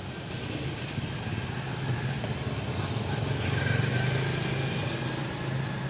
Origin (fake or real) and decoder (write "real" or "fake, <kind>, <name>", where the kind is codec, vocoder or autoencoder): real